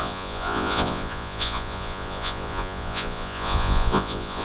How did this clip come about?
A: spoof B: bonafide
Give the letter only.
A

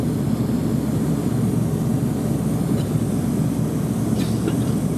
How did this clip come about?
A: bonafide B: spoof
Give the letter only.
B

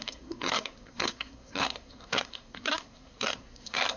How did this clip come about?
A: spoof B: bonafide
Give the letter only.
A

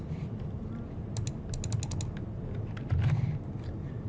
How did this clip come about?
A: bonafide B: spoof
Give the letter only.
A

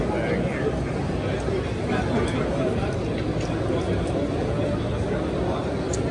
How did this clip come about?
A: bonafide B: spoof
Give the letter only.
A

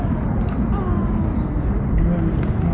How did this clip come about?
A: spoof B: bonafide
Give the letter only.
B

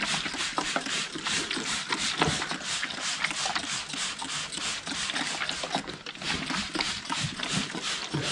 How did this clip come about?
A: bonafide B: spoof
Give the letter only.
A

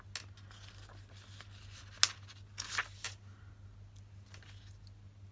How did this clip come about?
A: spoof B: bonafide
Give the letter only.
B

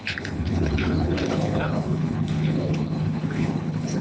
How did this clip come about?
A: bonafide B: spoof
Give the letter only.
B